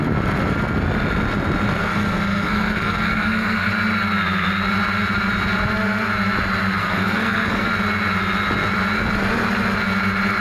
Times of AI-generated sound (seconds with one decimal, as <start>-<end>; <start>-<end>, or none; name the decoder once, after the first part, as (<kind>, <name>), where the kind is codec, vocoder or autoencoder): 1.8-3.7 (codec, SNAC); 6.8-7.7